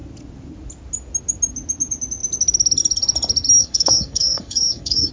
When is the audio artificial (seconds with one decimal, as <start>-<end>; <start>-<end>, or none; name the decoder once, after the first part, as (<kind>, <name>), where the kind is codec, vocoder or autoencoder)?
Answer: 3.6-5.1 (codec, SNAC)